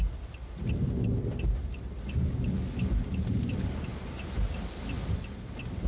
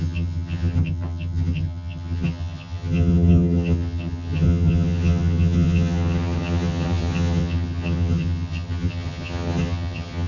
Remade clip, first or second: second